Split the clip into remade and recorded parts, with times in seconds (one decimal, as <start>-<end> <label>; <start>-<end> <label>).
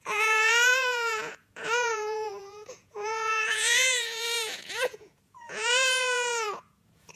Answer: 0.0-7.2 remade